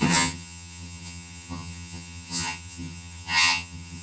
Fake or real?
fake